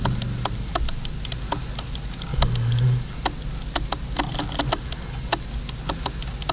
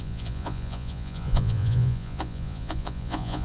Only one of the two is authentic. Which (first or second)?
first